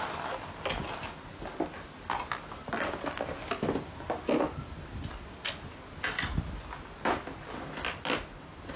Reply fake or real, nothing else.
real